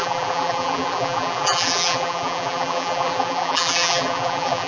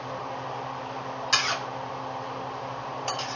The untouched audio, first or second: second